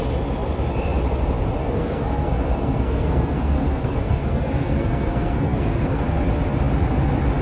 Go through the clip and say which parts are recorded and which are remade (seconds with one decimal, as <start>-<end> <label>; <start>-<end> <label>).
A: 0.0-1.6 recorded; 1.6-6.0 remade; 6.0-7.4 recorded